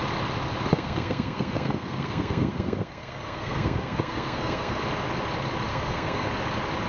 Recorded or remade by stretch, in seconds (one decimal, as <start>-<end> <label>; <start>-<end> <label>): 0.0-0.7 recorded; 0.7-4.8 remade; 4.8-5.7 recorded; 5.7-6.3 remade; 6.3-6.9 recorded